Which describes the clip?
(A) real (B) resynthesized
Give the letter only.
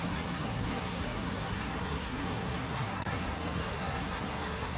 B